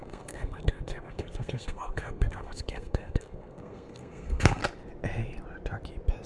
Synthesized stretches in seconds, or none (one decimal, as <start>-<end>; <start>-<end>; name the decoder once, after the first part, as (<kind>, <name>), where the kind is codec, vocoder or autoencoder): 0.0-4.6 (codec, SNAC)